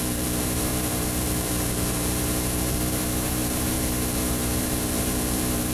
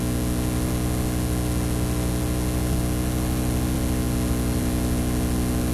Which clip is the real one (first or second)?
second